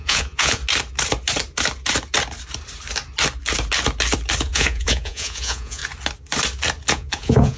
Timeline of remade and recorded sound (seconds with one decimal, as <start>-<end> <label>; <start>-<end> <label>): 0.0-0.6 remade; 0.6-4.4 recorded; 4.4-5.8 remade; 5.8-6.9 recorded; 6.9-7.6 remade